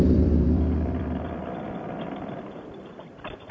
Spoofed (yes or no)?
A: yes